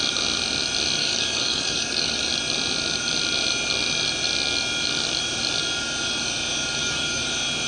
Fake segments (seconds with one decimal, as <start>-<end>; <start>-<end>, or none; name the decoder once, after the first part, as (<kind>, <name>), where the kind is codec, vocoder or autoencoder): 1.0-2.3 (codec, DAC); 6.8-7.3